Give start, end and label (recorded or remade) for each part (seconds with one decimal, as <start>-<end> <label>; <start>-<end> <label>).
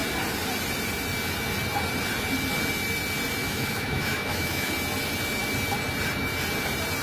0.0-3.4 recorded; 3.4-4.7 remade; 4.7-7.0 recorded